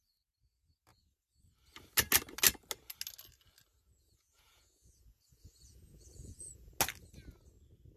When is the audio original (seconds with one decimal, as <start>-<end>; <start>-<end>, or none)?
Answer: 0.0-3.7; 6.7-8.0